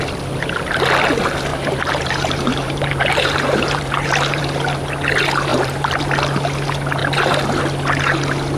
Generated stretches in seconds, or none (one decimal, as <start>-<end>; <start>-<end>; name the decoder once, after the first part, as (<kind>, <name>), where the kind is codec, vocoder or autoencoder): 1.5-4.4 (vocoder, BigVGAN v2); 5.5-6.0